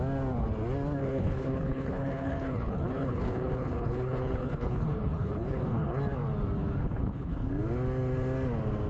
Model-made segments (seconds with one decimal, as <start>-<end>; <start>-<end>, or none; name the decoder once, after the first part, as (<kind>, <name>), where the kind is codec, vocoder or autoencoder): 1.0-6.0 (codec, HILCodec); 6.8-7.5